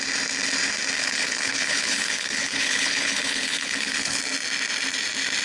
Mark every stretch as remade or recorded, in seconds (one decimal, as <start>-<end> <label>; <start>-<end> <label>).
0.0-1.0 recorded; 1.0-4.2 remade; 4.2-5.4 recorded